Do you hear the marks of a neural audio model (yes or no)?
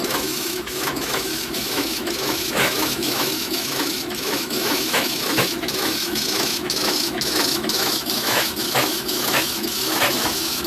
yes